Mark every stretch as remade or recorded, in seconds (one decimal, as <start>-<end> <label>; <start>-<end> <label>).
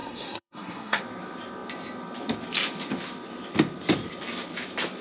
0.0-1.0 remade; 1.0-5.0 recorded